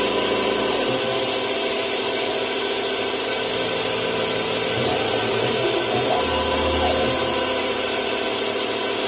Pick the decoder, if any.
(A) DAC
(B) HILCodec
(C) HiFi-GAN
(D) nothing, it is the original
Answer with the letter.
D